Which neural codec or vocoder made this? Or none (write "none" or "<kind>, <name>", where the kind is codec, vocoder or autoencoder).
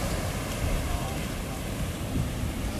none